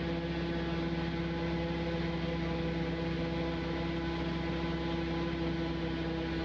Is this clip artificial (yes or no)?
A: no